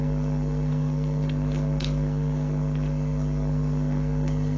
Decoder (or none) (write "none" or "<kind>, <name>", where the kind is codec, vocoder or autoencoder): codec, SNAC